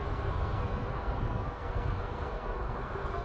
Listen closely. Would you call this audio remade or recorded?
remade